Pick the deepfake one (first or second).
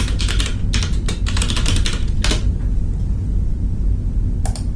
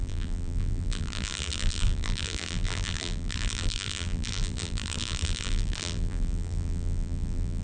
second